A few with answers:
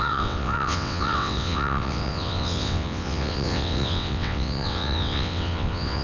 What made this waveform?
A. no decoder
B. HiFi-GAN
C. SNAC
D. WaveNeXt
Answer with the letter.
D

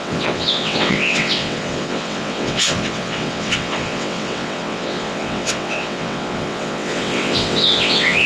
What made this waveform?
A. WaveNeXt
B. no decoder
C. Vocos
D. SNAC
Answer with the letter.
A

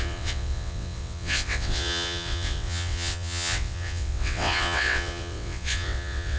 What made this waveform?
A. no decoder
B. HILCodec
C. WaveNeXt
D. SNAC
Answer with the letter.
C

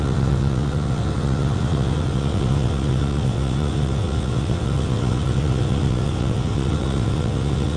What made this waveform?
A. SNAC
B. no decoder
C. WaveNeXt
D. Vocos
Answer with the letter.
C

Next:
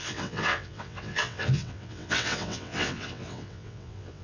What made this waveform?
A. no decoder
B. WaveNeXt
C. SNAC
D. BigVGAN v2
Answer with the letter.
B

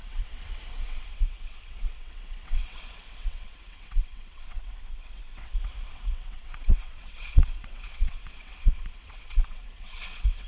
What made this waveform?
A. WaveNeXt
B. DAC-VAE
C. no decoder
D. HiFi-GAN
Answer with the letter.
A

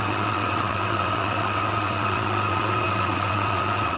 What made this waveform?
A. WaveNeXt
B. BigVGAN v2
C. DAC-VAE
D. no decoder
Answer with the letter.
A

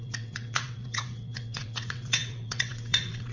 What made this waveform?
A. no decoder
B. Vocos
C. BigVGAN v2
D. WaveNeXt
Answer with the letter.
D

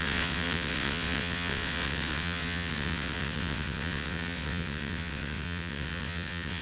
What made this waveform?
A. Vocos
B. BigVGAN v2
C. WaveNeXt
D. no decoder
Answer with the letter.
C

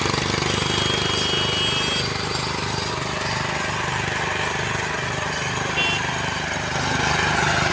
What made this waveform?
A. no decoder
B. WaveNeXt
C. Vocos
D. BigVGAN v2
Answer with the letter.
A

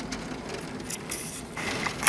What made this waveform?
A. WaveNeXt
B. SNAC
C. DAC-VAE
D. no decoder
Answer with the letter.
D